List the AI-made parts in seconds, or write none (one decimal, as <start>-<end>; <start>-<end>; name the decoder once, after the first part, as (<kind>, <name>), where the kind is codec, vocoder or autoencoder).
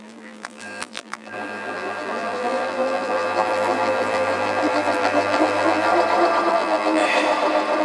0.0-5.9 (vocoder, BigVGAN v2); 6.5-7.0